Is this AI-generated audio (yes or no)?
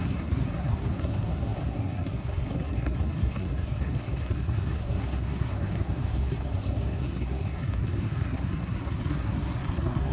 yes